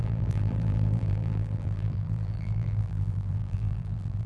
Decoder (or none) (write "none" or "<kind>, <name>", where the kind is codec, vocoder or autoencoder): vocoder, BigVGAN v2